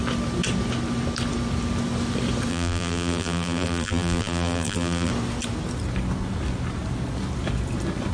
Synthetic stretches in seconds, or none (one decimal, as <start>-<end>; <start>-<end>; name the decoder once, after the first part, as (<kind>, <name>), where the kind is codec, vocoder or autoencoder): 2.5-5.1 (vocoder, BigVGAN v2)

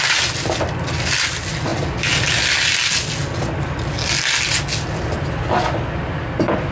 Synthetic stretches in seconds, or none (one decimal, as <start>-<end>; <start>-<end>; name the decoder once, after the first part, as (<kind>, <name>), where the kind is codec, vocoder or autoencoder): none

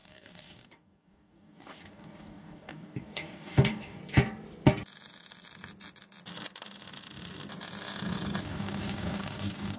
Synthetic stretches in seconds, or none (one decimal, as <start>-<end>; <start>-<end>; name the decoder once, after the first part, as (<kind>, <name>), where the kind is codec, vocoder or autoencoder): 0.0-4.0 (codec, DAC); 8.4-9.8

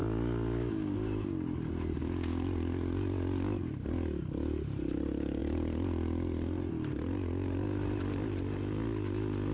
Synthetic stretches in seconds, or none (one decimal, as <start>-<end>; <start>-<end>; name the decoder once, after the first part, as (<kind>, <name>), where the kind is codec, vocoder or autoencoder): none

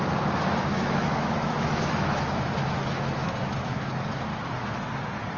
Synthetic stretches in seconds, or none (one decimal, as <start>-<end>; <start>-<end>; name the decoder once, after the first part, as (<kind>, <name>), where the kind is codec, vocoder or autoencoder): 0.7-3.9 (autoencoder, DAC-VAE); 4.3-4.9

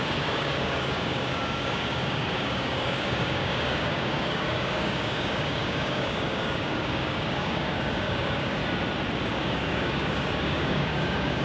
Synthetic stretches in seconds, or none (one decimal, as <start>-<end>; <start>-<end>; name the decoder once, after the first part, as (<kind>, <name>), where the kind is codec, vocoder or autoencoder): 0.0-8.6 (codec, DAC); 9.3-11.4

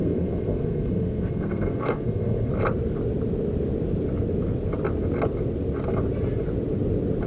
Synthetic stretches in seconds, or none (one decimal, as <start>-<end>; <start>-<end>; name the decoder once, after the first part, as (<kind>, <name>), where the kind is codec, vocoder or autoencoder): 0.0-2.5 (codec, SNAC)